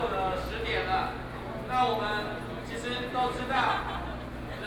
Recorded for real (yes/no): yes